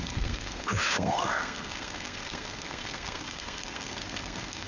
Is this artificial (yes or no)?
yes